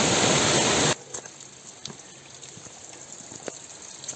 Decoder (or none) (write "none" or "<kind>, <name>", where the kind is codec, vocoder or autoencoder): none